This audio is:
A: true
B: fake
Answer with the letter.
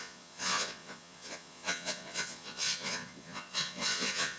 B